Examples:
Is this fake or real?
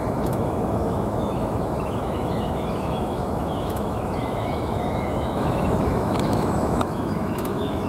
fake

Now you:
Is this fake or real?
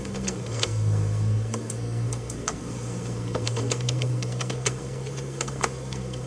fake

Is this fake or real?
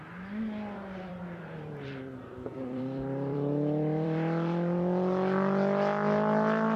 fake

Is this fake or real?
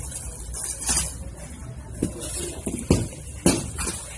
real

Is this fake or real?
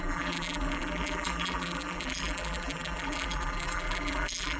fake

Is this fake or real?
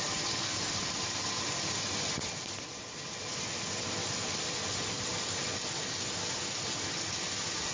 real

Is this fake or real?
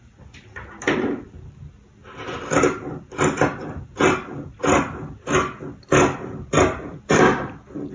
real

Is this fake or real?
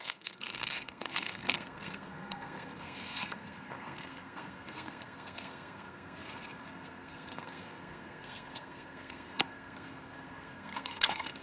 fake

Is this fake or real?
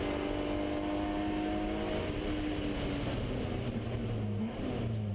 real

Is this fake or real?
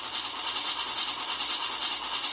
real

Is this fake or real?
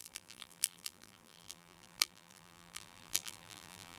fake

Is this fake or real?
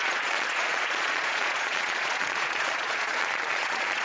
fake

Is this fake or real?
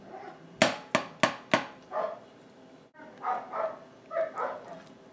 real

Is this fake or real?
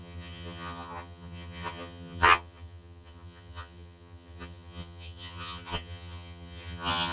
fake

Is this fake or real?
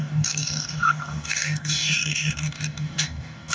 fake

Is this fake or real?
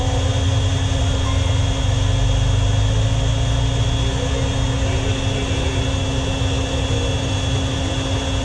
real